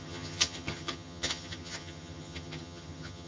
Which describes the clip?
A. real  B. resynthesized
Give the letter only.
B